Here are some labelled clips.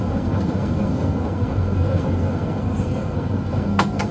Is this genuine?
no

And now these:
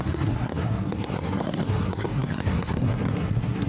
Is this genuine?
no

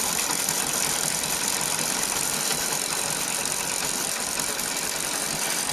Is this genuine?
yes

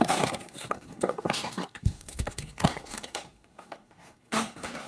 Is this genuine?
no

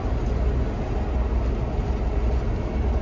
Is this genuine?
yes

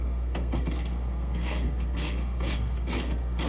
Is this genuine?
no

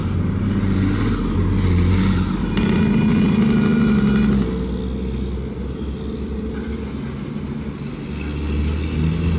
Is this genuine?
yes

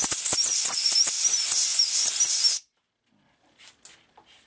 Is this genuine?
yes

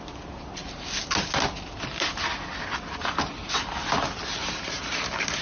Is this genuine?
yes